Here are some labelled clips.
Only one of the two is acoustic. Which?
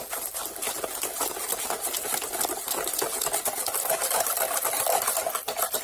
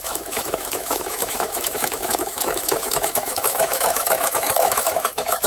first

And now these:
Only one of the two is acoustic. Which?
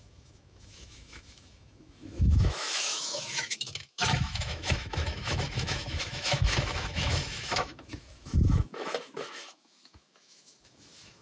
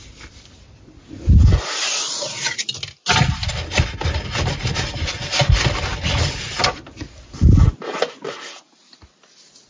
second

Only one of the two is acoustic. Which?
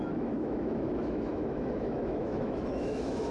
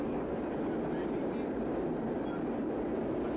second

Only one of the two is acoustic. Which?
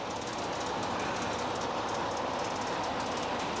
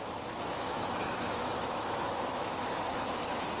first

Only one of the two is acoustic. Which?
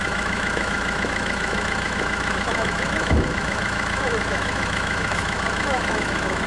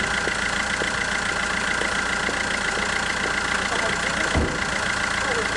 second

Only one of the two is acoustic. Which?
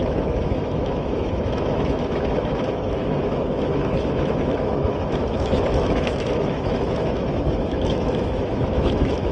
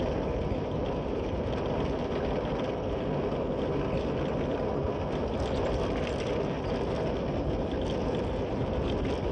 second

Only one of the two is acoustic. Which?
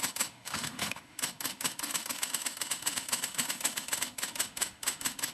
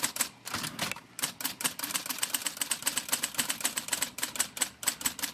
second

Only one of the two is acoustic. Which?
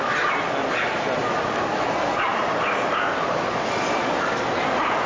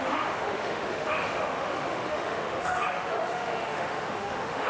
first